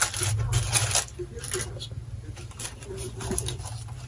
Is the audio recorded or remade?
recorded